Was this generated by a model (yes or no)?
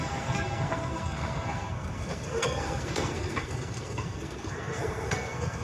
yes